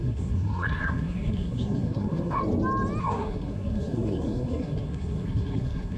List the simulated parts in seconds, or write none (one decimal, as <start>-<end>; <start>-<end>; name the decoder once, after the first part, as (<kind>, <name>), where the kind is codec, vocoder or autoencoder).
0.0-2.4 (codec, SNAC); 3.0-6.0